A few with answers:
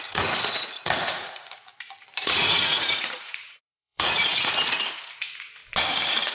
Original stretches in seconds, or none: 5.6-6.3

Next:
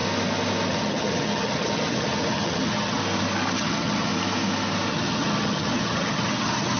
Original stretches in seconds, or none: 0.0-0.7; 3.0-3.6; 4.1-4.9

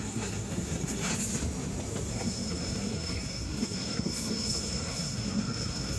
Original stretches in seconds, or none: 1.1-2.1

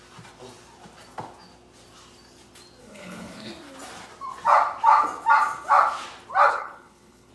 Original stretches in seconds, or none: 0.0-2.8; 3.5-6.5

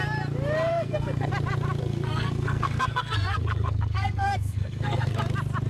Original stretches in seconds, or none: 0.0-0.7; 1.3-1.8; 5.2-5.7

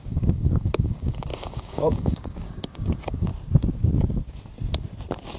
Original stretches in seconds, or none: 3.3-5.4